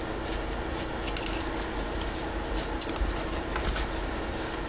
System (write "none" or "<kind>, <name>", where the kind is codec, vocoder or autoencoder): none